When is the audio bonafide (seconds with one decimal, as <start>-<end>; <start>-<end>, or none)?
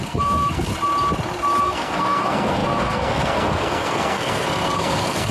0.7-1.6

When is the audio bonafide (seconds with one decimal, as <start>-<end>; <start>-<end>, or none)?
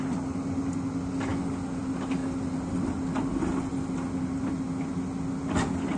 0.0-6.0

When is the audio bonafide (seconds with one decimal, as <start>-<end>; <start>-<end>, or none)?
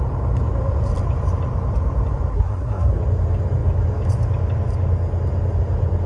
0.0-2.3; 2.9-6.1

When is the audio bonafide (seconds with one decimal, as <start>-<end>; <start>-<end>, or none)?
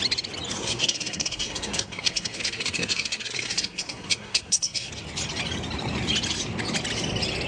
0.0-0.6; 4.9-7.5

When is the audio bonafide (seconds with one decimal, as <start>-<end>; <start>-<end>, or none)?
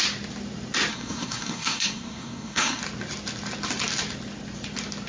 0.0-0.9; 2.8-5.1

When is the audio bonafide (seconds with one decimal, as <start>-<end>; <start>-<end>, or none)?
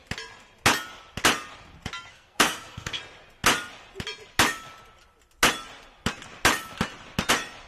0.0-2.1; 3.0-7.7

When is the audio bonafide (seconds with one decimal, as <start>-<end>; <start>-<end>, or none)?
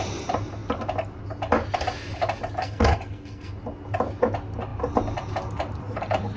0.0-2.6; 3.5-6.4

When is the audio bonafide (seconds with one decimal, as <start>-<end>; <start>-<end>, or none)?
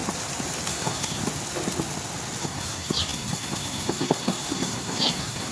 0.0-0.7; 1.2-2.4